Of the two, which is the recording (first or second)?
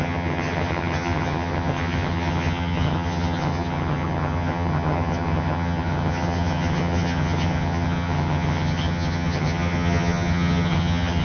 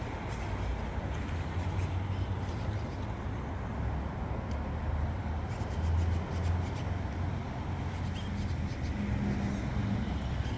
second